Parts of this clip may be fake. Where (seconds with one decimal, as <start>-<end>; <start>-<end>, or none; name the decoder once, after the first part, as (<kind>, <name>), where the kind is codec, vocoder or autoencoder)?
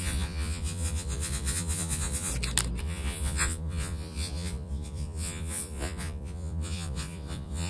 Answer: 0.0-2.3 (vocoder, Vocos); 2.8-7.7